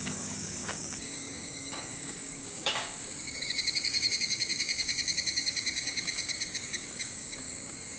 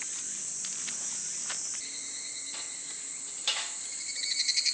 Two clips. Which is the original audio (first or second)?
second